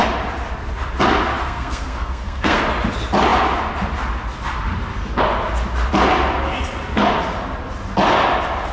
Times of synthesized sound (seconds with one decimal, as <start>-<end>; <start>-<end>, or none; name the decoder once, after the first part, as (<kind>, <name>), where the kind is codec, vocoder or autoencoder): 1.4-2.6 (codec, SNAC)